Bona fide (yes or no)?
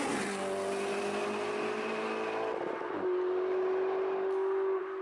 yes